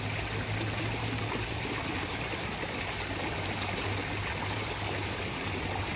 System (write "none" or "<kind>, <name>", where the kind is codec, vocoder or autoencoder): none